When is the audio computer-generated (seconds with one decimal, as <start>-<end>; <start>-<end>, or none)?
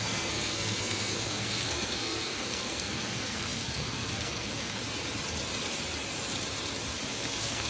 0.0-4.8; 7.1-7.7